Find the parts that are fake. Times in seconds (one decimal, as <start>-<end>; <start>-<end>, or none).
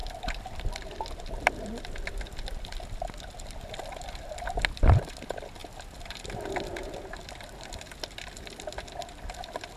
none